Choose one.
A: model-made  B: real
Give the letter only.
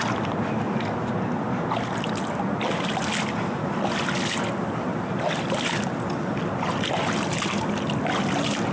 B